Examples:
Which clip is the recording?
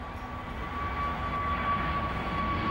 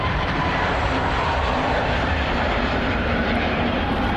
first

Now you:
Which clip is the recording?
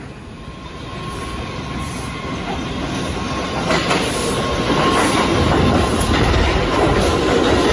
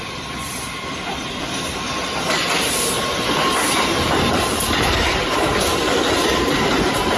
first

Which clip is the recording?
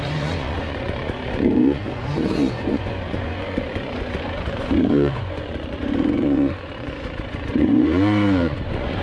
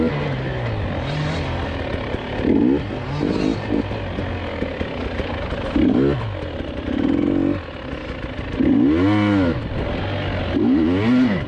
second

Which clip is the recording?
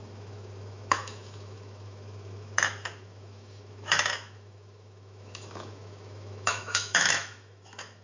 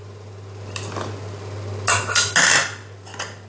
second